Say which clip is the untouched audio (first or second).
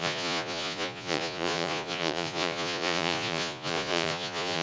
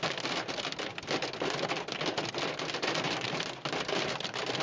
second